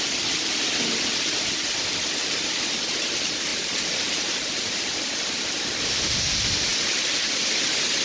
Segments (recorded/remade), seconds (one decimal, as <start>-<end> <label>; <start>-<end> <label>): 0.0-3.5 recorded; 3.5-5.4 remade; 5.4-8.0 recorded

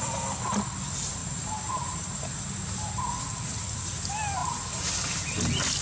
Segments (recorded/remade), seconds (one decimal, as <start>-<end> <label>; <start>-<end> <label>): 0.0-1.2 recorded; 1.2-2.9 remade; 2.9-5.8 recorded

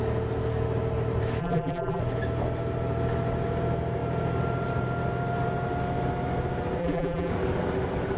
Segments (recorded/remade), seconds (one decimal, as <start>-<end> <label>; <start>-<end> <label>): 0.0-1.4 recorded; 1.4-2.0 remade; 2.0-6.8 recorded; 6.8-7.3 remade; 7.3-8.2 recorded

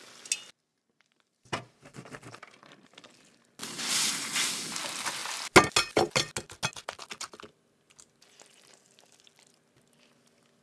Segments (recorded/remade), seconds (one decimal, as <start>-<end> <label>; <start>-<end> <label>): 0.0-0.7 recorded; 0.7-3.1 remade; 3.1-3.6 recorded; 3.6-4.8 remade; 4.8-10.6 recorded

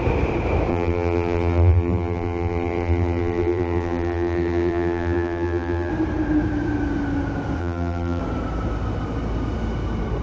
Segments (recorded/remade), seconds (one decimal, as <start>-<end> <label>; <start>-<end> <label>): 0.0-0.7 recorded; 0.7-5.9 remade; 5.9-7.6 recorded; 7.6-8.2 remade; 8.2-10.2 recorded

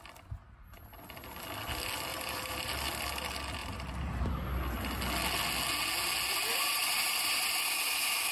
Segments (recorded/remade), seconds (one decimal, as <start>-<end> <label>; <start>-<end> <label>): 0.0-2.1 recorded; 2.1-2.7 remade; 2.7-3.6 recorded; 3.6-4.2 remade; 4.2-6.5 recorded; 6.5-7.5 remade; 7.5-8.3 recorded

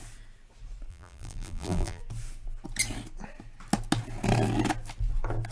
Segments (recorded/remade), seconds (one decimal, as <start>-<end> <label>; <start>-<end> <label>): 0.0-0.9 recorded; 0.9-2.0 remade; 2.0-5.5 recorded

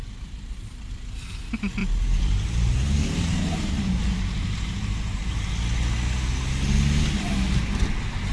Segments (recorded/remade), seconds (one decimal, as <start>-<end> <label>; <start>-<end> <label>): 0.0-0.9 remade; 0.9-1.8 recorded; 1.8-5.5 remade; 5.5-8.3 recorded